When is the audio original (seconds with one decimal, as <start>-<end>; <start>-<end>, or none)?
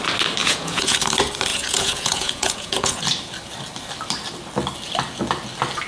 0.0-0.4; 1.0-1.5; 3.0-5.9